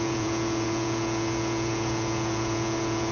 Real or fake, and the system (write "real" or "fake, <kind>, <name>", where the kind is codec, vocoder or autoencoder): fake, vocoder, Vocos